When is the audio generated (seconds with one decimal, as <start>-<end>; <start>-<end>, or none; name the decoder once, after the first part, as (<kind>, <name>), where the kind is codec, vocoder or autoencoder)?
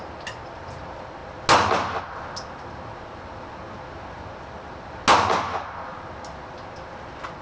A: none